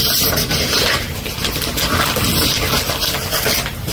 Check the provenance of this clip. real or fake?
real